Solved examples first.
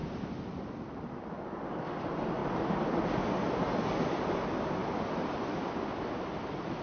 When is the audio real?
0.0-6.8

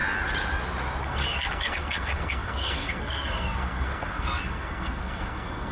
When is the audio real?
0.0-1.0